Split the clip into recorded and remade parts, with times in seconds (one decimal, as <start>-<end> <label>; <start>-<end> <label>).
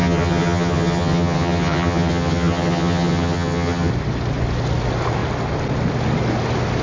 0.0-3.9 remade; 3.9-6.8 recorded